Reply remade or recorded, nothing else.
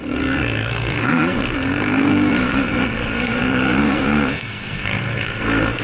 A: remade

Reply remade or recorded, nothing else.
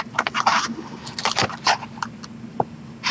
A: recorded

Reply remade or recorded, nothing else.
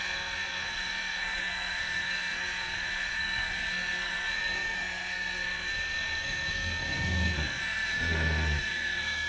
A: remade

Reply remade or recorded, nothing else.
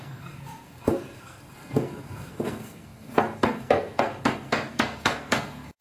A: remade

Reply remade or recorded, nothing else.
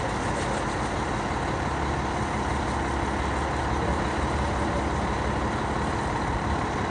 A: recorded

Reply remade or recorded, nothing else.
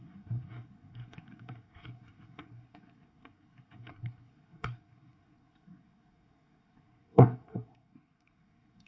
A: remade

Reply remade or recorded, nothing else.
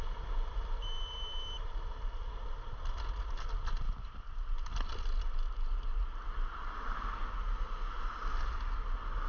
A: recorded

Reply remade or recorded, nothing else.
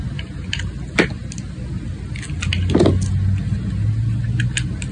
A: recorded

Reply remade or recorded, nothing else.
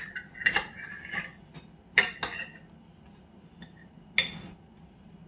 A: recorded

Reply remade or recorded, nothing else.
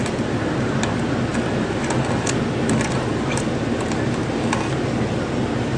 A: recorded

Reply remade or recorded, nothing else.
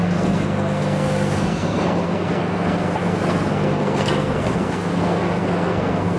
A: remade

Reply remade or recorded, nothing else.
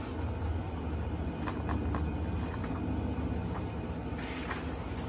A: recorded